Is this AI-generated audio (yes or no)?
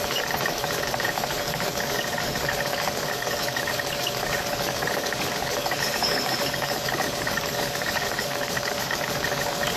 yes